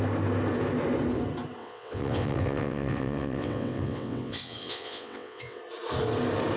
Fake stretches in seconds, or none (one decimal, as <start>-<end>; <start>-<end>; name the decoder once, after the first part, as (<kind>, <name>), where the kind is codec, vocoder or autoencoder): 1.6-5.6 (vocoder, WaveNeXt)